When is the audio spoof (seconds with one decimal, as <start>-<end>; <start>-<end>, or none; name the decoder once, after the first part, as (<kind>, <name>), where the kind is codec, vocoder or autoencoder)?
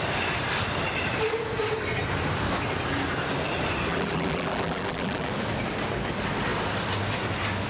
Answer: 3.9-5.3 (vocoder, BigVGAN v2)